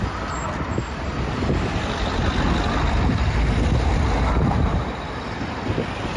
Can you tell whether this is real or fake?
real